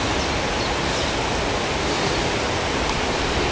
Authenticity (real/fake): real